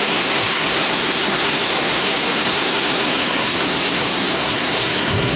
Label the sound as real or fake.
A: fake